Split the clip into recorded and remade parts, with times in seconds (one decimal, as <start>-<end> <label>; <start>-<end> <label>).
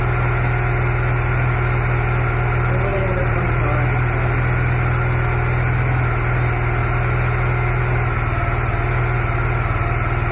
0.0-2.9 recorded; 2.9-3.7 remade; 3.7-10.3 recorded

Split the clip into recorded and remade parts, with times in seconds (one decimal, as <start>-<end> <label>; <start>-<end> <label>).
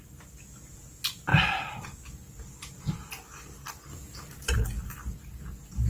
0.0-3.9 recorded; 3.9-4.5 remade; 4.5-5.9 recorded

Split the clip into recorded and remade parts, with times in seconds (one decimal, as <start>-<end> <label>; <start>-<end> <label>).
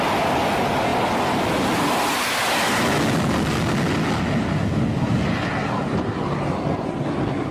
0.0-7.5 recorded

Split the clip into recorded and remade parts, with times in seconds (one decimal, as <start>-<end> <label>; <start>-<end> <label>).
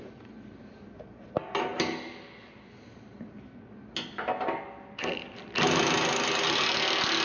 0.0-7.2 recorded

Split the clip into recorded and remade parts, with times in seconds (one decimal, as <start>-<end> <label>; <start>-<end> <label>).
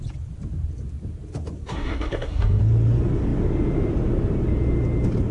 0.0-1.6 recorded; 1.6-2.6 remade; 2.6-5.3 recorded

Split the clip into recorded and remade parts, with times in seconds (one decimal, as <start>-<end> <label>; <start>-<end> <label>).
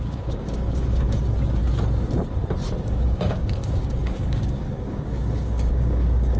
0.0-1.6 remade; 1.6-2.8 recorded; 2.8-6.4 remade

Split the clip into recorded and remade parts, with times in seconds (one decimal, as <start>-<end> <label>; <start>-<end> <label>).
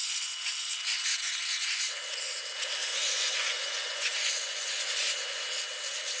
0.0-2.8 recorded; 2.8-5.4 remade; 5.4-6.2 recorded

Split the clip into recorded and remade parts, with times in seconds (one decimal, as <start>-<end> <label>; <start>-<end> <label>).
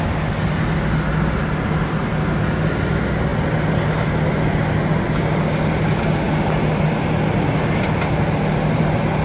0.0-9.2 recorded